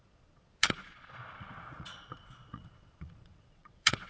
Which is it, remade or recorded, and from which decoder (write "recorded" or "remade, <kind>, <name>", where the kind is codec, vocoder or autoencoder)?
remade, vocoder, Vocos